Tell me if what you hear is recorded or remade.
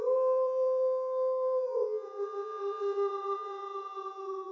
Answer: remade